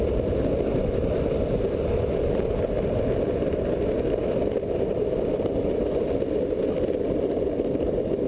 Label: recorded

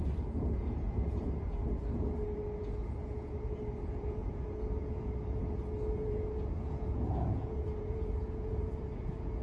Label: remade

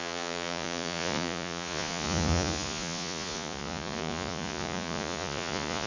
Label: remade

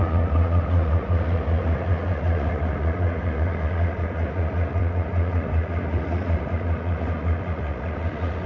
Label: remade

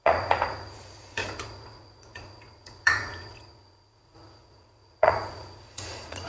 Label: remade